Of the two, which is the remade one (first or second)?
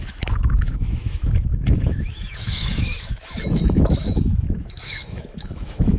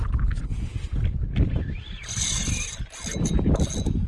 first